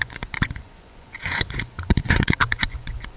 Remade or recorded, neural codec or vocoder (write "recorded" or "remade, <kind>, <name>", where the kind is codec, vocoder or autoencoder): remade, vocoder, Vocos